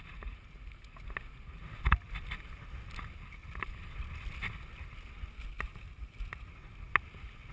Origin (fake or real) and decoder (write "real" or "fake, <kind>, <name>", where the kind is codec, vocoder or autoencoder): real